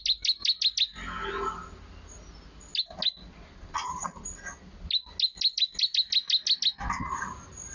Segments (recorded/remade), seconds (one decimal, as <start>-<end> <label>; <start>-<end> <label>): 0.0-7.7 recorded